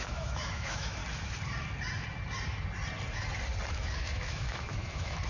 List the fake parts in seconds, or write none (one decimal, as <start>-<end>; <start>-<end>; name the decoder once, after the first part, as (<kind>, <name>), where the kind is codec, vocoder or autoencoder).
0.0-1.0 (autoencoder, DAC-VAE); 3.7-5.3